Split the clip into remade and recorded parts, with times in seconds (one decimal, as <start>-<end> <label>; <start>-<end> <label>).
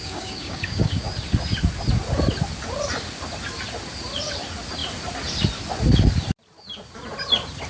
0.0-1.0 remade; 1.0-7.7 recorded